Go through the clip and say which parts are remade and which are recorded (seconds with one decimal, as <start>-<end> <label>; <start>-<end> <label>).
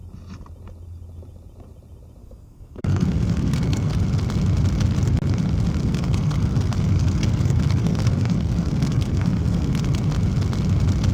0.0-2.2 recorded; 2.2-4.0 remade; 4.0-5.8 recorded; 5.8-9.7 remade; 9.7-11.1 recorded